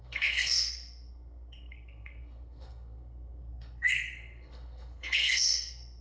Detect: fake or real fake